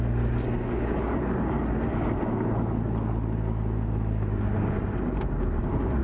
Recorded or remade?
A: recorded